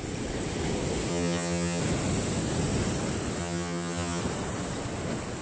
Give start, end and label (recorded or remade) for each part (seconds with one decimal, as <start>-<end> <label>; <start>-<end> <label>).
0.0-1.1 recorded; 1.1-1.8 remade; 1.8-3.4 recorded; 3.4-4.2 remade; 4.2-5.4 recorded

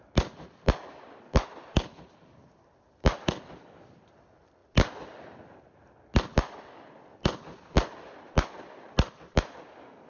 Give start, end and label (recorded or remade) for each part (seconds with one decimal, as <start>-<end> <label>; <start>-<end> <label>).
0.0-10.1 recorded

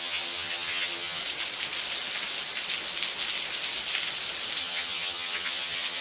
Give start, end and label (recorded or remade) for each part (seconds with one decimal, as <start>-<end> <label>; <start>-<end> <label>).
0.0-1.2 remade; 1.2-4.6 recorded; 4.6-6.0 remade

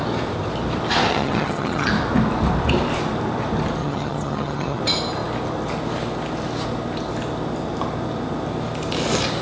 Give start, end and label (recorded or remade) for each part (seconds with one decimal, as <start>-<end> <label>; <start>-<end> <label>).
0.0-1.1 recorded; 1.1-1.9 remade; 1.9-3.8 recorded; 3.8-4.8 remade; 4.8-9.4 recorded

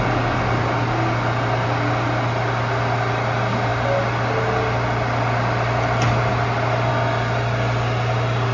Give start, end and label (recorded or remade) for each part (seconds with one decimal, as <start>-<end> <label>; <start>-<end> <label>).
0.0-8.5 recorded

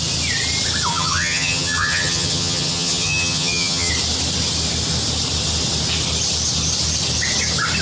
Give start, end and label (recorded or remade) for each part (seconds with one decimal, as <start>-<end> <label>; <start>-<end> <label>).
0.0-0.9 recorded; 0.9-3.9 remade; 3.9-7.8 recorded

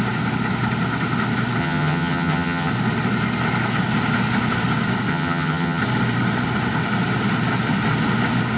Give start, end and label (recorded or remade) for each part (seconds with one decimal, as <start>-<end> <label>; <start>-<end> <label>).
0.0-1.6 recorded; 1.6-2.7 remade; 2.7-5.1 recorded; 5.1-5.8 remade; 5.8-8.6 recorded

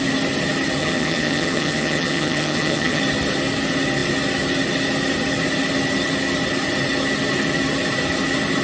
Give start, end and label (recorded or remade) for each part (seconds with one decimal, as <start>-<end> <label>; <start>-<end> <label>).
0.0-0.8 recorded; 0.8-3.0 remade; 3.0-8.6 recorded